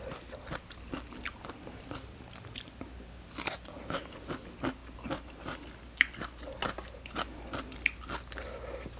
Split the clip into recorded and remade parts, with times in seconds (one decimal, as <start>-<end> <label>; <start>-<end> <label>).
0.0-9.0 recorded